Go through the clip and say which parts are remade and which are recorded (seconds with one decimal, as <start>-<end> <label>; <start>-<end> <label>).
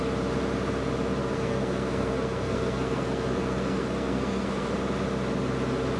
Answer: 0.0-1.2 recorded; 1.2-4.7 remade; 4.7-6.0 recorded